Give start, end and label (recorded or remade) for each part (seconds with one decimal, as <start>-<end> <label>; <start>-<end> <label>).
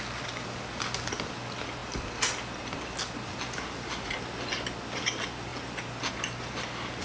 0.0-7.0 recorded